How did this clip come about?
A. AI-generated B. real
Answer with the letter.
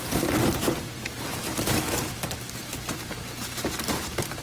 A